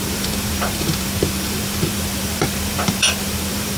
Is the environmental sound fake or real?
fake